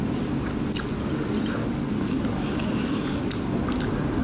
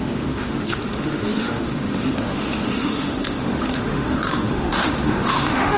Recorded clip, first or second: first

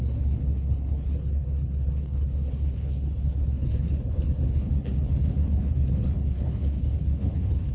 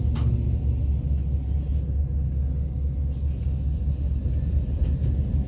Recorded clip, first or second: second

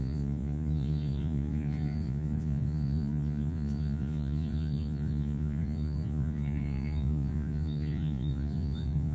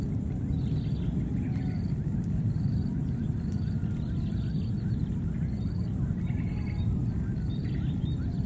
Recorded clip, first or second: second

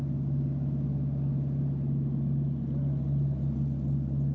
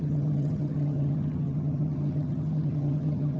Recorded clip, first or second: first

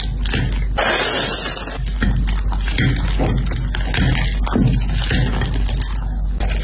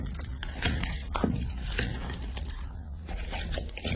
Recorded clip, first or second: first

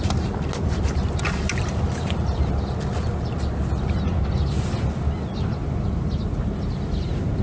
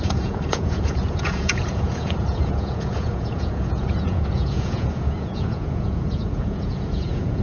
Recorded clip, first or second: first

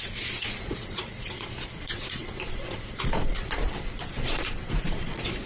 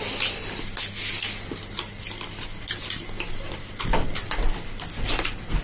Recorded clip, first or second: second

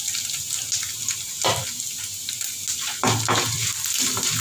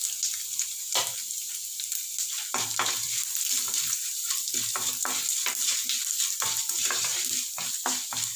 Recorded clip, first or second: first